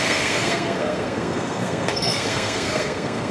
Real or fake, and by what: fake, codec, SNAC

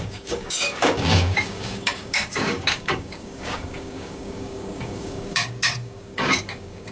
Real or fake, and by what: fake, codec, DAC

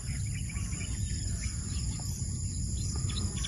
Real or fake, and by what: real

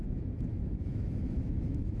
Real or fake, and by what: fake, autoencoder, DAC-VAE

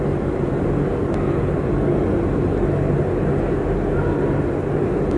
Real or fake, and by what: real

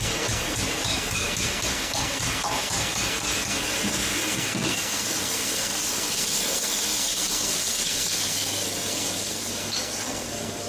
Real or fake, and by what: fake, codec, SNAC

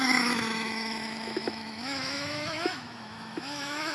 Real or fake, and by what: fake, autoencoder, DAC-VAE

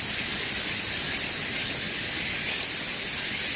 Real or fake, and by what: fake, vocoder, BigVGAN v2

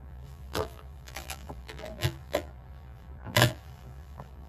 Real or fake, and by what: fake, vocoder, BigVGAN v2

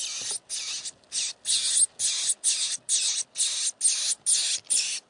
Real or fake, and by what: real